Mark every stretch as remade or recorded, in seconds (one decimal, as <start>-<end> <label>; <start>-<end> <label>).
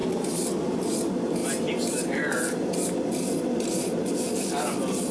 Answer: 0.0-5.1 recorded